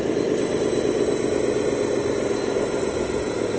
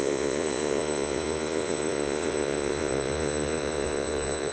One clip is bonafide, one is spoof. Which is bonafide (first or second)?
first